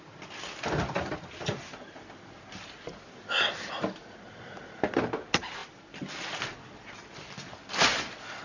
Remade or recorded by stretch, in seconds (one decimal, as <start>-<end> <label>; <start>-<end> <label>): 0.0-8.4 recorded